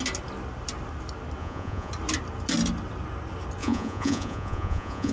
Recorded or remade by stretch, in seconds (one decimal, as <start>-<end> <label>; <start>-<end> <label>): 0.0-1.4 recorded; 1.4-1.9 remade; 1.9-3.6 recorded; 3.6-5.1 remade

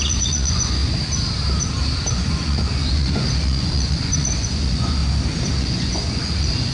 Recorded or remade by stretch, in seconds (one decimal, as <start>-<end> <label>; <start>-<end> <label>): 0.0-0.8 remade; 0.8-2.1 recorded; 2.1-5.0 remade; 5.0-5.6 recorded; 5.6-6.7 remade

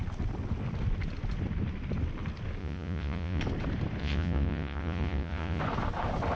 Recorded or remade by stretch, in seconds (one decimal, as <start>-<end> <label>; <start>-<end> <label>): 0.0-2.6 recorded; 2.6-3.4 remade; 3.4-4.0 recorded; 4.0-5.6 remade; 5.6-6.4 recorded

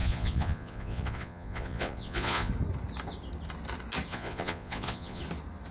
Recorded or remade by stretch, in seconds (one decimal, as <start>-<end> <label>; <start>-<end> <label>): 0.0-2.5 remade; 2.5-4.1 recorded; 4.1-5.2 remade; 5.2-5.7 recorded

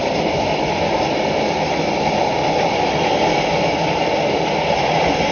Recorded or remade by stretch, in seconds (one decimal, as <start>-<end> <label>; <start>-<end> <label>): 0.0-5.3 recorded